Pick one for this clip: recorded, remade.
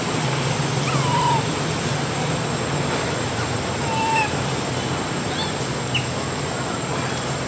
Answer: recorded